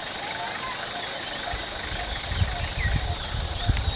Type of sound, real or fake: real